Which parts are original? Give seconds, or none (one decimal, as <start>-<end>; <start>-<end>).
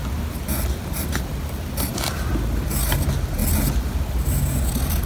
0.0-5.1